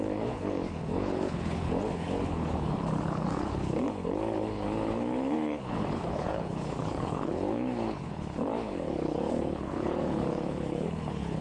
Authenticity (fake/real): fake